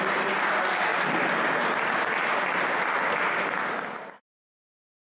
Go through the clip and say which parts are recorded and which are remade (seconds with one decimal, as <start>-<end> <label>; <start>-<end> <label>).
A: 0.0-5.0 recorded